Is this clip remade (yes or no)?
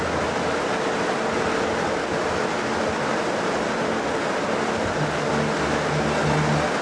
no